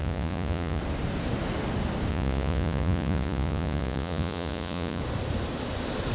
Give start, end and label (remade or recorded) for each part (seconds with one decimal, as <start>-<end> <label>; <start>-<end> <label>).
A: 0.0-0.8 remade; 0.8-2.1 recorded; 2.1-5.0 remade; 5.0-6.1 recorded